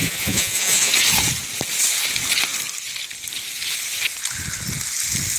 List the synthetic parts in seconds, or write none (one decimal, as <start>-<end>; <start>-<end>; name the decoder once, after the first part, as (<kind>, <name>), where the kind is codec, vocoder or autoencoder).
0.0-0.9 (vocoder, Vocos)